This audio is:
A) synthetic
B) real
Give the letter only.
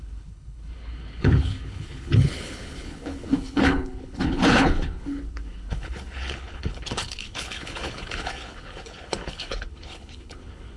A